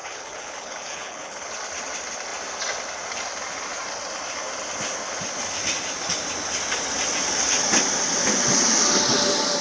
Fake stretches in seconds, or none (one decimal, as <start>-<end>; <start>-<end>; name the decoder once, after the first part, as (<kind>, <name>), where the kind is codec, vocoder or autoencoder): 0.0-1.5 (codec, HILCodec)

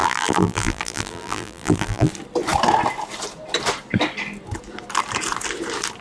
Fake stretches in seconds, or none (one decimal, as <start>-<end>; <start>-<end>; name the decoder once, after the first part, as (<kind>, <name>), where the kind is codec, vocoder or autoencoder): 0.0-2.1 (vocoder, BigVGAN v2)

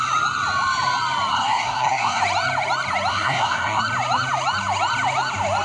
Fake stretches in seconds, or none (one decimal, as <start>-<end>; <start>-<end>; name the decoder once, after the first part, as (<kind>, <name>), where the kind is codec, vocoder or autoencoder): 1.3-2.2 (codec, SNAC); 3.1-3.8

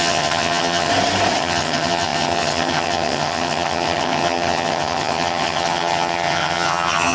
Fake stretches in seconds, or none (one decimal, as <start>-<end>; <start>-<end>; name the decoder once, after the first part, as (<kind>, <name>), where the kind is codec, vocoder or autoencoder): 0.0-0.9 (vocoder, HiFi-GAN); 1.4-7.1

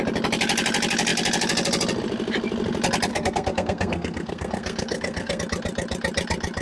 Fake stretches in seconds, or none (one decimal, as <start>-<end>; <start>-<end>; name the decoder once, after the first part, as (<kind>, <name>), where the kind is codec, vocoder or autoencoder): 3.1-5.4 (codec, SNAC)

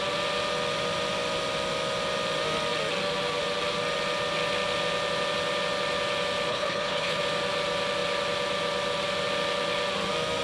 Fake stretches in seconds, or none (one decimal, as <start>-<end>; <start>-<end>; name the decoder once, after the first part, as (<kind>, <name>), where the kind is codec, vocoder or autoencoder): 6.5-7.2 (codec, HILCodec)

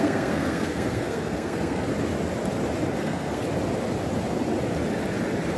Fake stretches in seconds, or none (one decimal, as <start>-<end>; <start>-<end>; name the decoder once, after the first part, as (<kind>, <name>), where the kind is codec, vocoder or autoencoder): 0.0-1.9 (codec, SNAC); 3.0-3.4